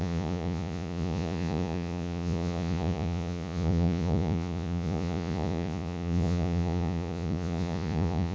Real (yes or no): no